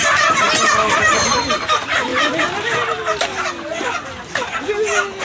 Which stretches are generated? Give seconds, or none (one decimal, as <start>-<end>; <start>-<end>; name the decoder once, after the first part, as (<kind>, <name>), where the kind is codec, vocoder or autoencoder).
0.0-2.1 (vocoder, BigVGAN v2)